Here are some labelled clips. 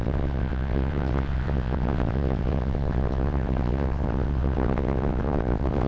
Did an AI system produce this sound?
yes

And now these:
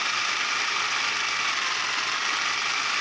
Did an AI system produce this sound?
no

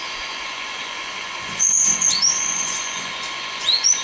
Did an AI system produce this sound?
yes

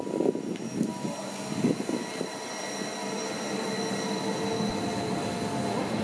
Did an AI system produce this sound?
no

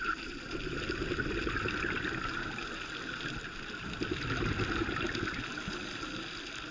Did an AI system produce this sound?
no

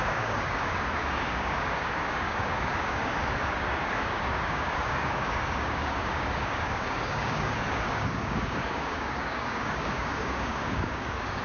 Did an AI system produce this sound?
yes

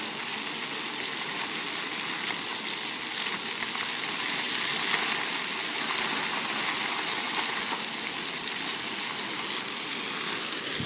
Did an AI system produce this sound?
no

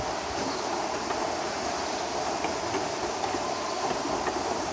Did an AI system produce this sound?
no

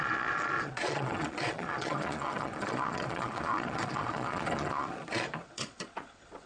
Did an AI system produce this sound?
yes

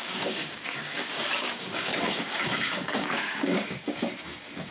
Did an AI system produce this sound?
yes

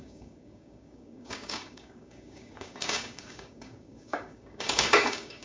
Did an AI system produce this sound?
yes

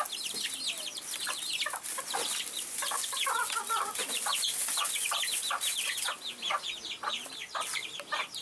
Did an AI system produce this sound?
no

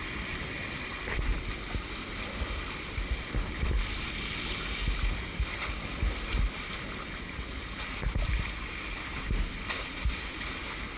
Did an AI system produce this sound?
no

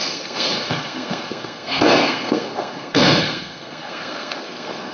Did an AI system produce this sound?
yes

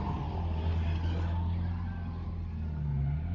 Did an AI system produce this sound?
no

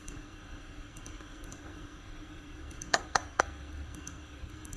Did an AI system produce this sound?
yes